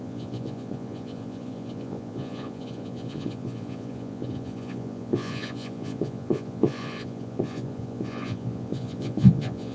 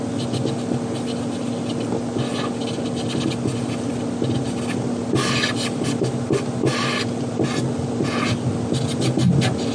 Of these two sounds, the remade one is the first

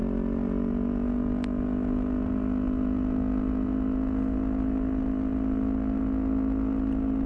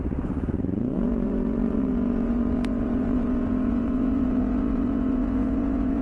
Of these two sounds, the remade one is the second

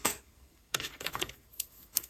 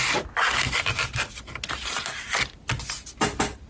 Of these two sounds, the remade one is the first